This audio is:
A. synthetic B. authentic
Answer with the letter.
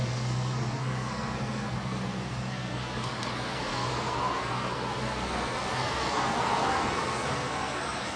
A